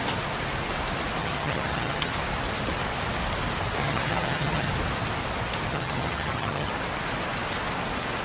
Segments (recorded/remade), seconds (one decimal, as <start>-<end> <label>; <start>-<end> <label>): 0.0-1.2 recorded; 1.2-2.1 remade; 2.1-3.8 recorded; 3.8-4.7 remade; 4.7-5.7 recorded; 5.7-6.7 remade; 6.7-8.2 recorded